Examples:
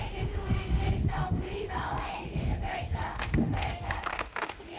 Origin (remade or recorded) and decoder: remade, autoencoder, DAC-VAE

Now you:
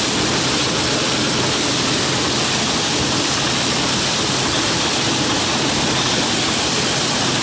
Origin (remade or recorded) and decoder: recorded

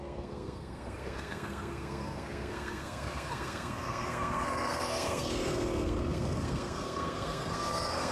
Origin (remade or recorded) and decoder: remade, codec, SNAC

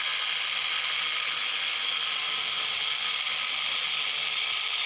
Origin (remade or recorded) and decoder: recorded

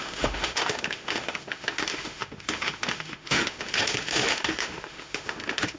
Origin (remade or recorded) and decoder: remade, autoencoder, DAC-VAE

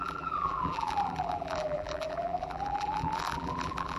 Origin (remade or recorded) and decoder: remade, vocoder, BigVGAN v2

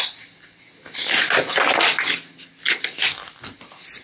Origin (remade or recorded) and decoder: recorded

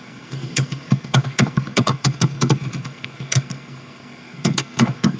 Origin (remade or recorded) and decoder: remade, codec, SNAC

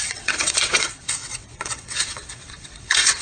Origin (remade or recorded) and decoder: remade, vocoder, WaveNeXt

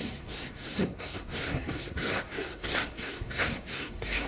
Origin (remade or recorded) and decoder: remade, codec, SNAC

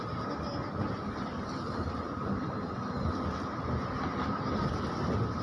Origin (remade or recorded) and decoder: recorded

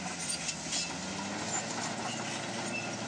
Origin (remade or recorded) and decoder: recorded